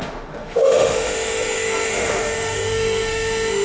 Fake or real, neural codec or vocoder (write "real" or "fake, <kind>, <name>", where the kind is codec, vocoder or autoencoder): fake, autoencoder, DAC-VAE